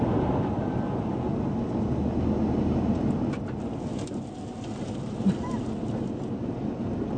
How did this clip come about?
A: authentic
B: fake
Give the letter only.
A